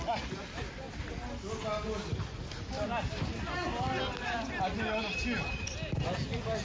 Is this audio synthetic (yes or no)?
no